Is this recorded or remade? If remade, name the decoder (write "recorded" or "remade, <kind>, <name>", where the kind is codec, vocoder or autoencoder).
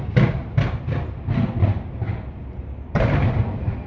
recorded